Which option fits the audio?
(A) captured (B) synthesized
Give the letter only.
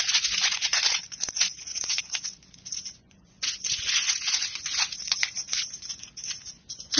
B